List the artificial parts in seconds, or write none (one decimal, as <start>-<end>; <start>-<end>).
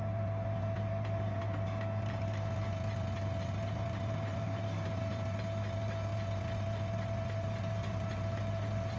none